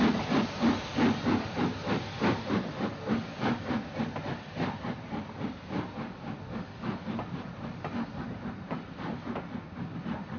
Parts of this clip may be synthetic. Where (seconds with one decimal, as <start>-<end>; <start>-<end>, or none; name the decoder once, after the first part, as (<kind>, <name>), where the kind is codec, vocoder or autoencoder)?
none